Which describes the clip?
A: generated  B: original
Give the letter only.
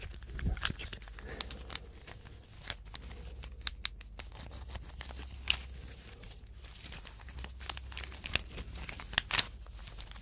B